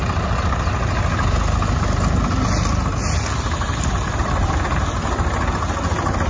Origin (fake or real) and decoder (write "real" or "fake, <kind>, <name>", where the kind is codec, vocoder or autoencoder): real